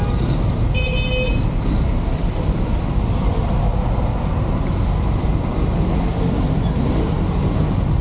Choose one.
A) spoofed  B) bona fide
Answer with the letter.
B